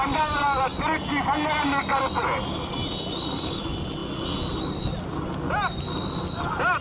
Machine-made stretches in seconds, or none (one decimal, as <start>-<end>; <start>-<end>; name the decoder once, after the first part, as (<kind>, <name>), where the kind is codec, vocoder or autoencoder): none